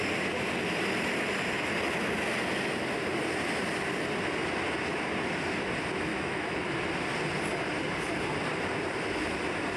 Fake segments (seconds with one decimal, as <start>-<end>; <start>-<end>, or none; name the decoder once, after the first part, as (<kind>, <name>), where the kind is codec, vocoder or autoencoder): 6.1-6.6 (autoencoder, DAC-VAE)